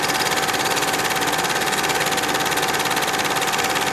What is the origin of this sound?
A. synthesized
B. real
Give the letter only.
B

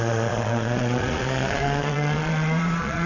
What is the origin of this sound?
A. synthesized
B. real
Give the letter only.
A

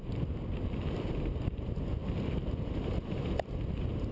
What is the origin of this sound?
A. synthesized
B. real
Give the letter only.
B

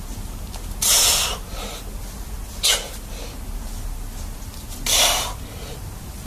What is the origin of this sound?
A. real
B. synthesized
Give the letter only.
A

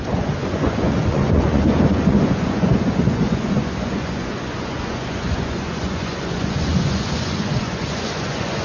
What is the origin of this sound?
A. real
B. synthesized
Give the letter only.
B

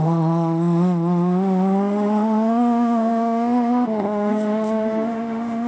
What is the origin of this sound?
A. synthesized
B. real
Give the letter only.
A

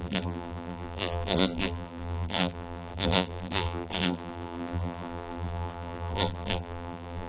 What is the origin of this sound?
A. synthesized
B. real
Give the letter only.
A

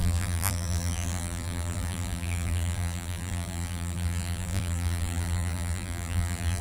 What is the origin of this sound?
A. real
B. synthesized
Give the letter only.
B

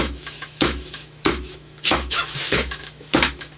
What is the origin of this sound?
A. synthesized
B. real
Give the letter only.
A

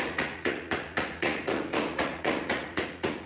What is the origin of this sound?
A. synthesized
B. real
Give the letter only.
A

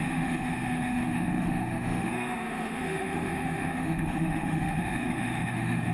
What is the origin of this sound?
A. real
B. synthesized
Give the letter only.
B